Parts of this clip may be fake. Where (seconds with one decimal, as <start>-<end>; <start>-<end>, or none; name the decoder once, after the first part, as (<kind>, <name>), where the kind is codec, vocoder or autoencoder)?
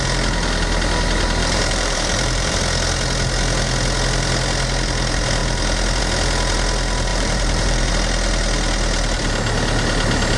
1.4-2.6 (vocoder, BigVGAN v2); 7.1-7.9